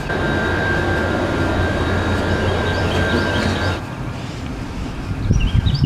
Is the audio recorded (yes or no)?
no